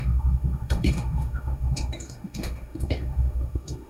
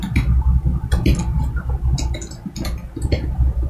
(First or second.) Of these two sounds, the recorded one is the second